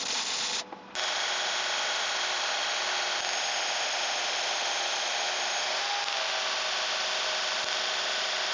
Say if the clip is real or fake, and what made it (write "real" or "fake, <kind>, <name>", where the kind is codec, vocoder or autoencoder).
real